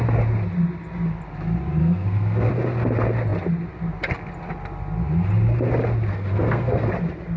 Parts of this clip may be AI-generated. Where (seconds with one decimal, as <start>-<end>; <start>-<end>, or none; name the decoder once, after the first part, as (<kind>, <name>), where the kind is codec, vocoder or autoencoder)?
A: 1.8-2.5 (codec, SNAC); 6.1-6.9